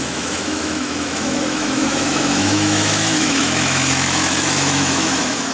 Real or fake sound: fake